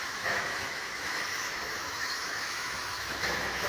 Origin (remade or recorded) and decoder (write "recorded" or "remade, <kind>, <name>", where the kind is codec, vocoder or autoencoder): remade, autoencoder, DAC-VAE